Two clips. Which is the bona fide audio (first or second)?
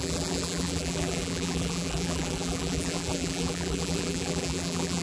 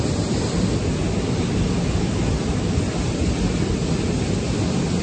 second